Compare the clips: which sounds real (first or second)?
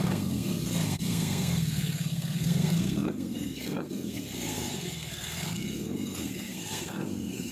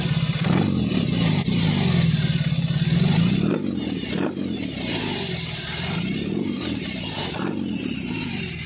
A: second